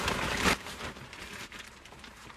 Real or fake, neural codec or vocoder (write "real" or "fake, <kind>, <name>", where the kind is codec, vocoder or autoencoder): fake, vocoder, BigVGAN v2